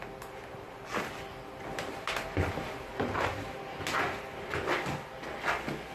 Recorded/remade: recorded